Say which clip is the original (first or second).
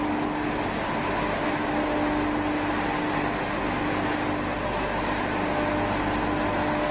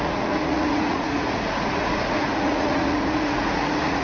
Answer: first